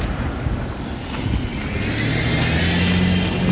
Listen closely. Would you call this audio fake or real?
real